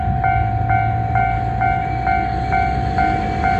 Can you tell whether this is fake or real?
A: real